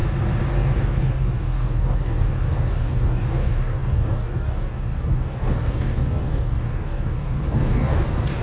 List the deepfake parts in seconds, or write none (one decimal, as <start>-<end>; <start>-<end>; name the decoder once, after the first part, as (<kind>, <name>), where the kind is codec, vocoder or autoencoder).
0.5-8.4 (codec, DAC)